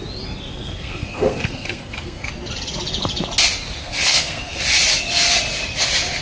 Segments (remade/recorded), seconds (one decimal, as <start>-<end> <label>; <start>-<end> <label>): 0.0-0.5 recorded; 0.5-2.3 remade; 2.3-3.8 recorded; 3.8-4.6 remade; 4.6-6.2 recorded